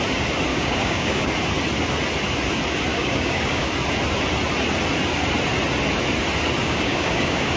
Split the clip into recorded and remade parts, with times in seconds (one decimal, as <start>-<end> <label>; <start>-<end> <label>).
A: 0.0-0.5 recorded; 0.5-1.3 remade; 1.3-2.9 recorded; 2.9-3.7 remade; 3.7-6.6 recorded; 6.6-7.6 remade

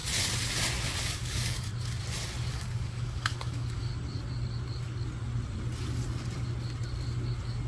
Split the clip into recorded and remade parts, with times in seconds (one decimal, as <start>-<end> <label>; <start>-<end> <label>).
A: 0.0-1.0 recorded; 1.0-1.7 remade; 1.7-2.5 recorded; 2.5-3.9 remade; 3.9-7.7 recorded

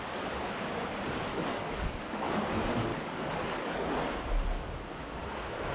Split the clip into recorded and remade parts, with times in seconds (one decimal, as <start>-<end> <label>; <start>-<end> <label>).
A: 0.0-1.3 recorded; 1.3-2.5 remade; 2.5-2.9 recorded; 2.9-3.9 remade; 3.9-5.7 recorded

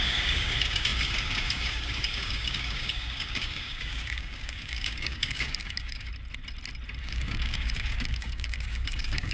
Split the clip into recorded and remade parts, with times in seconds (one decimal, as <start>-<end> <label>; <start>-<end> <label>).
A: 0.0-6.1 remade; 6.1-7.0 recorded; 7.0-9.3 remade

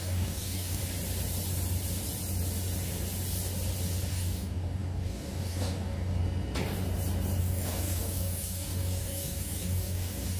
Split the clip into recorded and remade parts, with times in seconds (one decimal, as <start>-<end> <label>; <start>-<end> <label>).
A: 0.0-0.8 remade; 0.8-4.1 recorded; 4.1-6.2 remade; 6.2-7.4 recorded; 7.4-10.4 remade

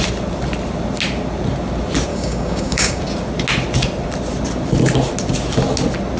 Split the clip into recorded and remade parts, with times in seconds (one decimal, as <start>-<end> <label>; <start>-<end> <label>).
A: 0.0-2.1 recorded; 2.1-3.0 remade; 3.0-6.2 recorded

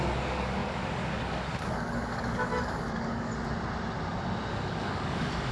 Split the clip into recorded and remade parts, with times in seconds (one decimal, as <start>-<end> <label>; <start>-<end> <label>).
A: 0.0-3.3 remade; 3.3-4.5 recorded; 4.5-5.5 remade